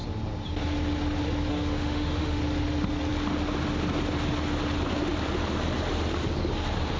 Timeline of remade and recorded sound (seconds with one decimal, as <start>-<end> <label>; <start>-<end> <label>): 0.0-1.5 recorded; 1.5-2.4 remade; 2.4-7.0 recorded